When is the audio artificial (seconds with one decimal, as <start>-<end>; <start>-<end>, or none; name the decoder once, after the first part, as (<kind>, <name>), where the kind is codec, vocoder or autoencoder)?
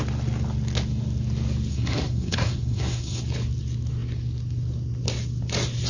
1.7-3.2 (codec, SNAC)